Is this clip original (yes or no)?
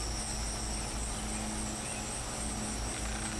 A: yes